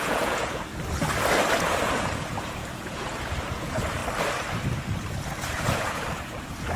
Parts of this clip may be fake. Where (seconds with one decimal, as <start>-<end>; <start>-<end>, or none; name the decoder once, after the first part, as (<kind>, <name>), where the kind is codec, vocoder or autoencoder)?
0.0-0.7 (vocoder, Vocos); 1.6-4.0; 5.4-6.8